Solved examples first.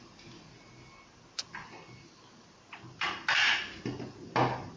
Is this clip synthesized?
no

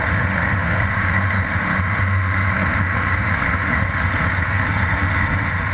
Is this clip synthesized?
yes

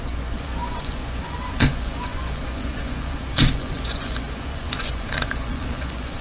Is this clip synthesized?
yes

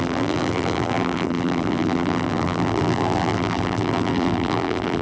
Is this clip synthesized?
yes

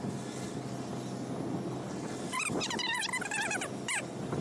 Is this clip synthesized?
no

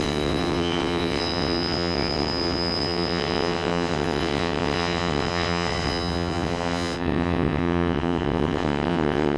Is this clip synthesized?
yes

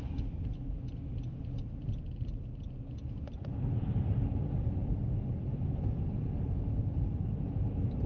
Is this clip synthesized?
no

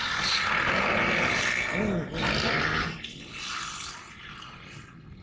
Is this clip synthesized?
no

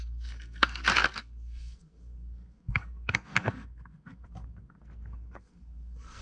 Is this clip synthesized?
yes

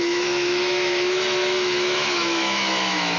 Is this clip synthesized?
yes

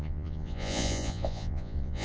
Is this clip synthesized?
yes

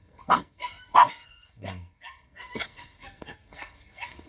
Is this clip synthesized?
yes